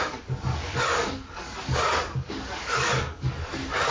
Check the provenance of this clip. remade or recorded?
remade